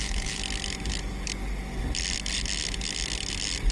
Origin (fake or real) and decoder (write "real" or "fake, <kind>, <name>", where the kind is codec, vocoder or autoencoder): real